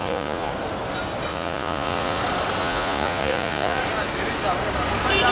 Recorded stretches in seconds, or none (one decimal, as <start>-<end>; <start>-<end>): 0.5-1.3; 2.2-2.6; 3.8-5.3